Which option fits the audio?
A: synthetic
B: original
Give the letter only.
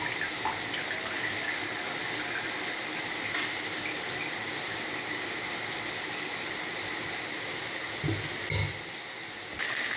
B